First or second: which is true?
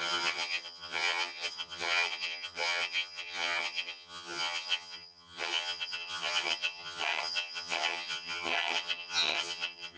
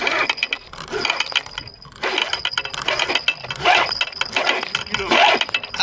second